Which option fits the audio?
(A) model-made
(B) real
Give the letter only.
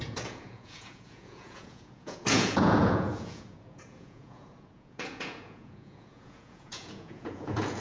A